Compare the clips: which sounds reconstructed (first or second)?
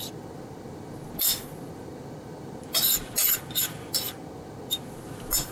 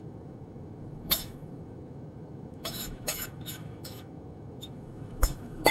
second